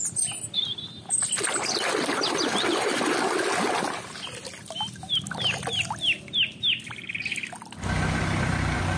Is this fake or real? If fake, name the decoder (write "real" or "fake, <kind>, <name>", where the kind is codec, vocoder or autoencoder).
real